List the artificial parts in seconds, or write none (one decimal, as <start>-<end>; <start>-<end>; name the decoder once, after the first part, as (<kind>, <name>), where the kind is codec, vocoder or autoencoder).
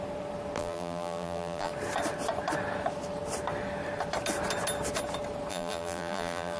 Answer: 0.6-1.7 (vocoder, BigVGAN v2); 5.5-6.6